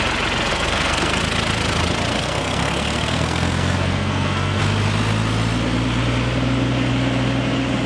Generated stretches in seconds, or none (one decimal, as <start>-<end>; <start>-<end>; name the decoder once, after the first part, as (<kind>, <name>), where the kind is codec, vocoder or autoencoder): 0.5-1.2 (codec, SNAC); 2.1-4.6